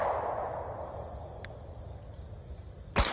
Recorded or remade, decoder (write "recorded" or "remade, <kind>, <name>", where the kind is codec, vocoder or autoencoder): recorded